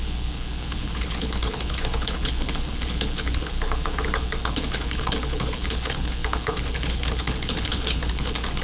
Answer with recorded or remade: remade